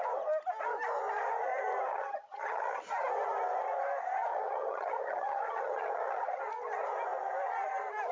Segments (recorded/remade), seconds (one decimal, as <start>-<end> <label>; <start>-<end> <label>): 0.0-1.9 recorded; 1.9-2.8 remade; 2.8-4.3 recorded; 4.3-6.4 remade; 6.4-8.1 recorded